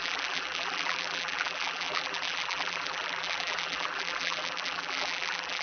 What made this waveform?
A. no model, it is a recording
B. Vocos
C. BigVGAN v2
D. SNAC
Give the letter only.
C